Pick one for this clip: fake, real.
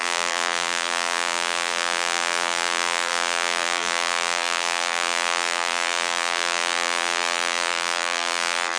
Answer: fake